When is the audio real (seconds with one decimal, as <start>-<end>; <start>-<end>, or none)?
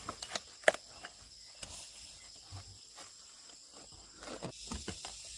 0.0-5.4